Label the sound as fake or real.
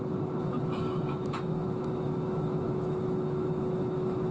fake